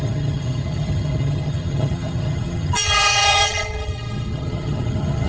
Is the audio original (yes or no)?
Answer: no